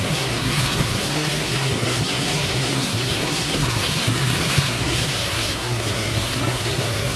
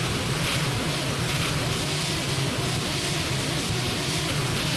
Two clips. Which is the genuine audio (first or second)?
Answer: second